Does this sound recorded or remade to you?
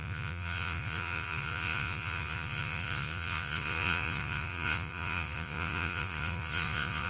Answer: remade